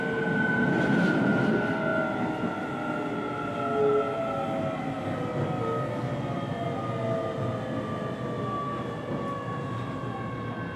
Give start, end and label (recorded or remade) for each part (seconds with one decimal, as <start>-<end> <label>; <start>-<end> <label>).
0.0-10.8 recorded